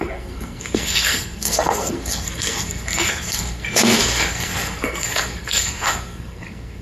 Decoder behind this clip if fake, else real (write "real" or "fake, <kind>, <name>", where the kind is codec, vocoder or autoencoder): fake, codec, SNAC